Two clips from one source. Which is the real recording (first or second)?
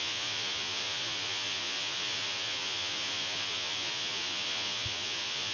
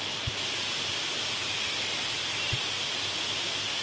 second